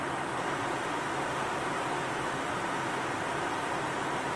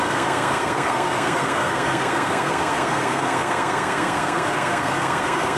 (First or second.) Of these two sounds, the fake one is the second